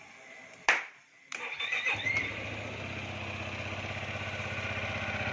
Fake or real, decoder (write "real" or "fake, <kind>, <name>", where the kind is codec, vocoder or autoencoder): real